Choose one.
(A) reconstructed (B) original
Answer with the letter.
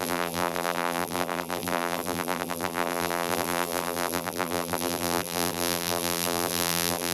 A